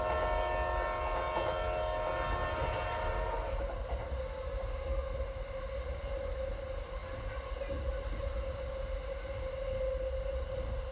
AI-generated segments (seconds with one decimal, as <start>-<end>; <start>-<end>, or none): none